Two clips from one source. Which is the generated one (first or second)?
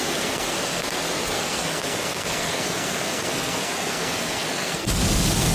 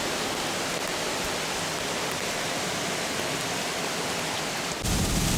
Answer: first